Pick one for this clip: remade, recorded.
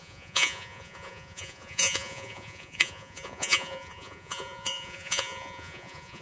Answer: remade